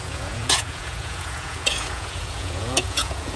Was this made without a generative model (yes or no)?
no